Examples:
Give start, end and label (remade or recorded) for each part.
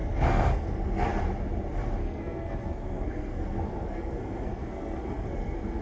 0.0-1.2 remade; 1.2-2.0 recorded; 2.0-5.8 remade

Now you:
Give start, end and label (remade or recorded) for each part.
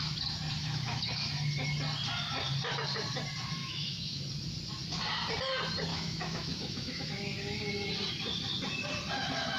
0.0-0.6 recorded; 0.6-1.1 remade; 1.1-3.6 recorded; 3.6-4.2 remade; 4.2-5.9 recorded; 5.9-7.1 remade; 7.1-9.6 recorded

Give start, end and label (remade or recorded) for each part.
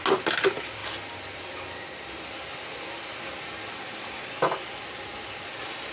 0.0-5.9 recorded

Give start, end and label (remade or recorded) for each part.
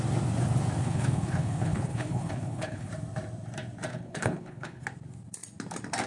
0.0-0.8 recorded; 0.8-2.9 remade; 2.9-3.9 recorded; 3.9-4.8 remade; 4.8-6.1 recorded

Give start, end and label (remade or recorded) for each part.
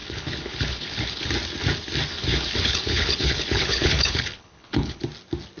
0.0-1.3 remade; 1.3-2.1 recorded; 2.1-5.0 remade; 5.0-5.6 recorded